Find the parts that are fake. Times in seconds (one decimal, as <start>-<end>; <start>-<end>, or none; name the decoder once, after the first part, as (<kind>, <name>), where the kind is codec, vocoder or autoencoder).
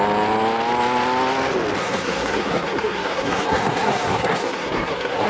1.8-5.3 (codec, SNAC)